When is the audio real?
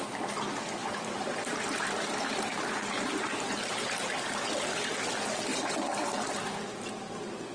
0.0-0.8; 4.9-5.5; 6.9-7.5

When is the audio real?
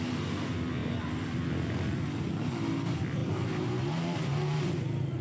0.0-3.2; 4.6-5.2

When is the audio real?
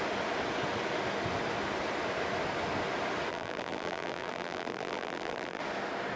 0.0-3.3; 5.6-6.2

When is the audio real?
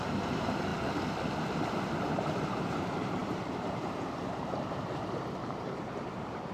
0.7-2.4